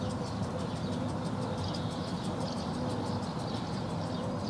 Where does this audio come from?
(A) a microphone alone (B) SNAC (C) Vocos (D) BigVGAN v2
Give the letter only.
A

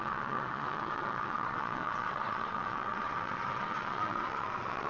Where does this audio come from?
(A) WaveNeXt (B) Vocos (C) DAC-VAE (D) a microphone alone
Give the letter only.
A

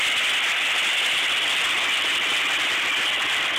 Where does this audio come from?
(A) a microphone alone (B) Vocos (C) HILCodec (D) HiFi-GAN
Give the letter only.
A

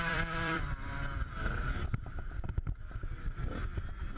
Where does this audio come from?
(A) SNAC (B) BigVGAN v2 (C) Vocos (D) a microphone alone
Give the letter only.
B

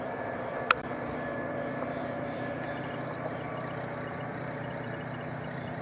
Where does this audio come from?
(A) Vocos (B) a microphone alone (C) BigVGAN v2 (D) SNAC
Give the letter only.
C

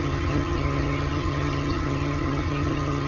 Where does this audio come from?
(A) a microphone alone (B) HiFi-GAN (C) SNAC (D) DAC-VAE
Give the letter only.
B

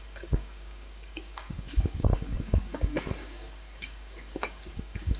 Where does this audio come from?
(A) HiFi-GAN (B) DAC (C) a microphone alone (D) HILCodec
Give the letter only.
B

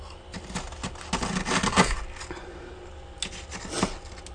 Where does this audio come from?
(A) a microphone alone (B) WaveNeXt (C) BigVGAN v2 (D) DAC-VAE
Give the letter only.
A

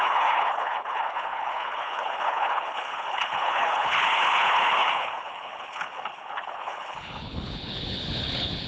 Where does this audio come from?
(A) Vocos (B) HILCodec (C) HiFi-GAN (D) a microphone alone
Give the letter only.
B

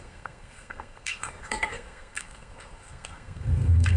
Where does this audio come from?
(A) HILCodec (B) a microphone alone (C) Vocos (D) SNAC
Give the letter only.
D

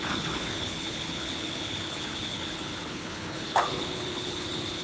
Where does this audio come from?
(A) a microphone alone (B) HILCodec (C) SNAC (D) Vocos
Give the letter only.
B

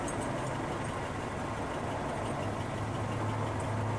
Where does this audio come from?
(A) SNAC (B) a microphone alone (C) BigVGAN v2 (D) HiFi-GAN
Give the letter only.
B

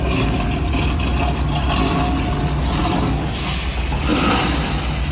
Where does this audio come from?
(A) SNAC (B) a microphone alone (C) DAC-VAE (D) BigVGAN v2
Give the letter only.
B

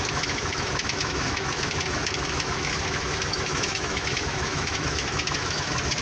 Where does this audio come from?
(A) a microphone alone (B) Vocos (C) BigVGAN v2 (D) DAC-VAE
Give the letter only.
D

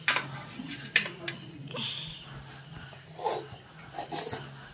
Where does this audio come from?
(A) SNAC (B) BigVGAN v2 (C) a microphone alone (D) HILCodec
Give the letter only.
C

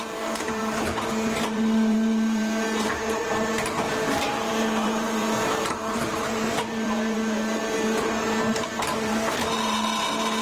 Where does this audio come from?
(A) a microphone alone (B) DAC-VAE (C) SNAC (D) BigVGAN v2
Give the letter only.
D